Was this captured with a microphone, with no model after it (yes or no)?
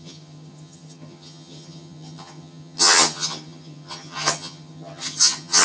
no